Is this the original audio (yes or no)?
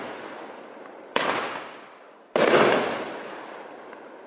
yes